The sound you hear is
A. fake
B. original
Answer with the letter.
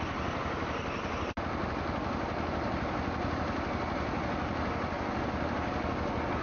B